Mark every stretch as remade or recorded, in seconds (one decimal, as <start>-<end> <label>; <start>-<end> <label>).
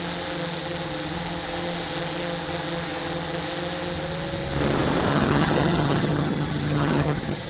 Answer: 0.0-5.1 recorded; 5.1-7.5 remade